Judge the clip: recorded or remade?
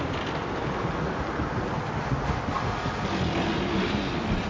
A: recorded